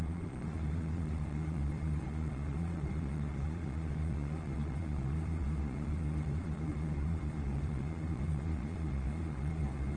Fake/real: fake